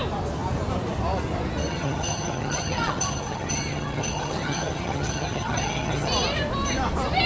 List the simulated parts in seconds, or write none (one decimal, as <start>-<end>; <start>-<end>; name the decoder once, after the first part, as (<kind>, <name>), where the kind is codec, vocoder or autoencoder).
1.7-6.1 (vocoder, HiFi-GAN)